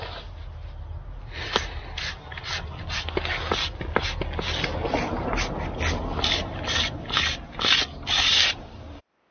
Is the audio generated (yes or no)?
no